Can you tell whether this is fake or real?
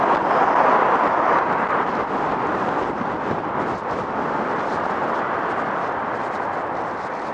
fake